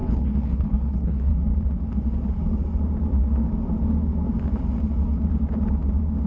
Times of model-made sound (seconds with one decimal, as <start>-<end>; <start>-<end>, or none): 0.0-1.3